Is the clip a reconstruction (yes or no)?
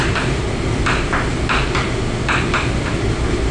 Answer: no